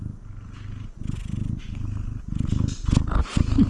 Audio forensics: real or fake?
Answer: real